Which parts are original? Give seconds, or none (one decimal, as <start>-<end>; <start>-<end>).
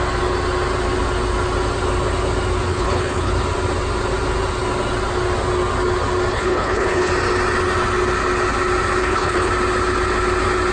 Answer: 0.0-2.7; 3.3-6.3; 7.1-9.0; 9.5-10.7